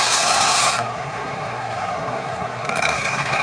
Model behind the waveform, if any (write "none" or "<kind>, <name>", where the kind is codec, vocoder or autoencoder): codec, SNAC